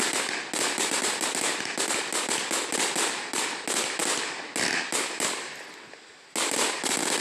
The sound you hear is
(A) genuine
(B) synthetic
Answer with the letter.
A